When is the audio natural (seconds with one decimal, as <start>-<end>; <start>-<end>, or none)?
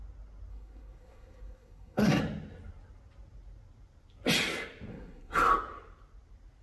0.0-0.5; 2.2-4.9; 5.5-6.6